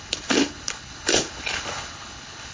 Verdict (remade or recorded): remade